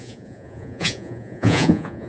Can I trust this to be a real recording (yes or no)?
no